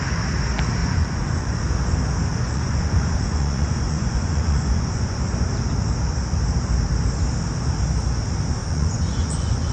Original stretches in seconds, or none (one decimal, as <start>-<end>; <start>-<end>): 0.0-0.8; 1.6-2.3; 5.2-8.6